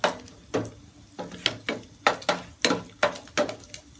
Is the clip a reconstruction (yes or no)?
no